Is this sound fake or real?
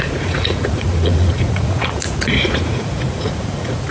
fake